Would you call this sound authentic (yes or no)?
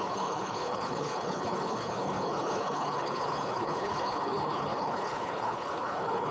no